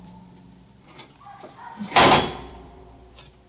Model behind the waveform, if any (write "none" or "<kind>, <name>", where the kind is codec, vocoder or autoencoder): vocoder, BigVGAN v2